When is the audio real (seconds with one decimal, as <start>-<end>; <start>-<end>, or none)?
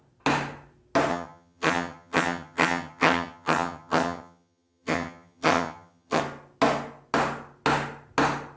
0.0-1.1; 6.2-8.6